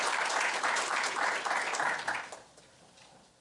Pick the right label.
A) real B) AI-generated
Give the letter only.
A